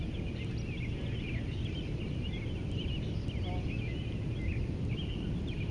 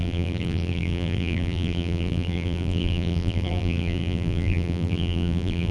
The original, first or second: first